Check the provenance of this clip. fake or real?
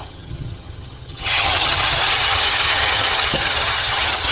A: fake